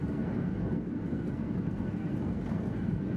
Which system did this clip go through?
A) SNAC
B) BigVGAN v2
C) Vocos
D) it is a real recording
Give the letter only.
A